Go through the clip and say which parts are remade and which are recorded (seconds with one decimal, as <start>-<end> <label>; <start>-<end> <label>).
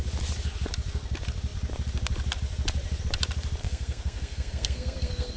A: 0.0-3.6 recorded; 3.6-5.4 remade